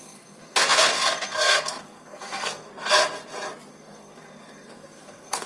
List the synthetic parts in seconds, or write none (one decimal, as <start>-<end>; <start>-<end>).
0.0-2.7; 3.7-5.5